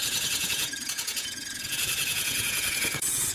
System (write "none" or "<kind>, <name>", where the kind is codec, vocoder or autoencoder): vocoder, Vocos